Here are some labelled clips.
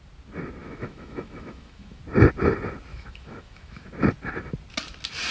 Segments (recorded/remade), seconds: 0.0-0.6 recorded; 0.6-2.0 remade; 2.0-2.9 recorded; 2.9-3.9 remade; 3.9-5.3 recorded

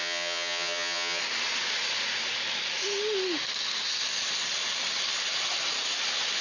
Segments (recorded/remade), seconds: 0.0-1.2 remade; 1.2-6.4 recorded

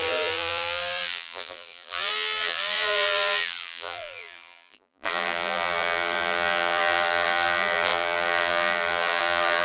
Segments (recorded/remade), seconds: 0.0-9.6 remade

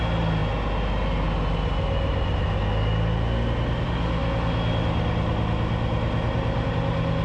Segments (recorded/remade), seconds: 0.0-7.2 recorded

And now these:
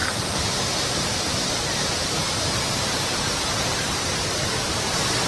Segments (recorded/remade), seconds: 0.0-3.2 recorded; 3.2-4.1 remade; 4.1-5.3 recorded

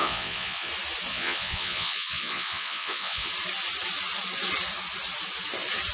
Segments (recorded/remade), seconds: 0.0-0.7 remade; 0.7-1.1 recorded; 1.1-3.3 remade; 3.3-5.9 recorded